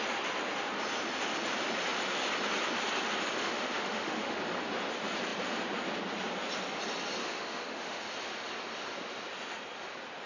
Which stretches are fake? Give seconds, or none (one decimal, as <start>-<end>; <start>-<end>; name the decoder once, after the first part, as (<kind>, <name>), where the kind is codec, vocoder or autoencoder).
3.4-4.4 (autoencoder, DAC-VAE); 7.2-8.0

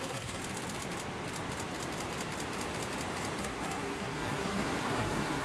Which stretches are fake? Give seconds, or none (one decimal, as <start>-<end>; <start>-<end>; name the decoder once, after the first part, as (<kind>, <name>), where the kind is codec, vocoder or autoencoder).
0.0-0.4 (codec, SNAC); 3.4-5.4

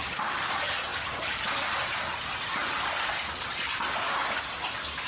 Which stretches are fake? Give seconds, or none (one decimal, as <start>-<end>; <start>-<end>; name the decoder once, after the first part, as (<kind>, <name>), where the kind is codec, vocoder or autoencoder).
2.6-3.6 (vocoder, BigVGAN v2)

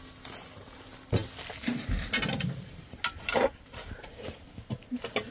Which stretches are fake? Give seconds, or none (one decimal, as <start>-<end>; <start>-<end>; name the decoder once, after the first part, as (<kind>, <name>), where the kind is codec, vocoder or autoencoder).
none

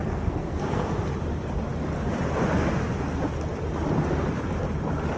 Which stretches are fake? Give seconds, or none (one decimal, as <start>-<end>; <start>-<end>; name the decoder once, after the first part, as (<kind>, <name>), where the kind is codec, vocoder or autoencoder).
0.0-0.9 (codec, SNAC)

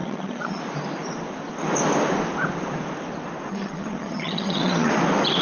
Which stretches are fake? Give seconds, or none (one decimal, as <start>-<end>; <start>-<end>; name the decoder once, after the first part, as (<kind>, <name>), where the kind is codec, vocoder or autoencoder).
0.0-0.6 (vocoder, HiFi-GAN); 3.5-4.9

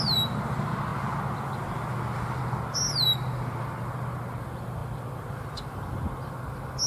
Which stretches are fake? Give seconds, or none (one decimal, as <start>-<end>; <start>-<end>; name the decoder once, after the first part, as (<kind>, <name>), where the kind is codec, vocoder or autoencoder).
none